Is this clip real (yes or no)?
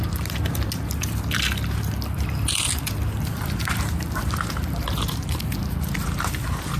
yes